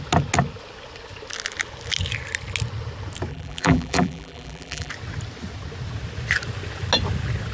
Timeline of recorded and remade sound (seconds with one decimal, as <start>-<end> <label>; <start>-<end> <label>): 0.0-3.3 recorded; 3.3-4.9 remade; 4.9-7.5 recorded